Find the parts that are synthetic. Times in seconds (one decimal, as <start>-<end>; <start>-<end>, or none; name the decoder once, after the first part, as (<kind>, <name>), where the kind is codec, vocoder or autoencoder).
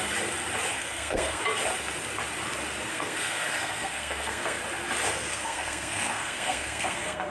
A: 0.7-1.4 (codec, SNAC); 2.9-4.6; 5.3-7.3